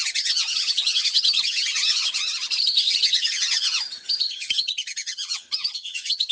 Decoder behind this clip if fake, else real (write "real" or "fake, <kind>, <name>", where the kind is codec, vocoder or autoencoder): fake, vocoder, HiFi-GAN